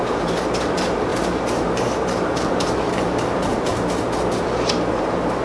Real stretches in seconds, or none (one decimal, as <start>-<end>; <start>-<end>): 3.7-4.9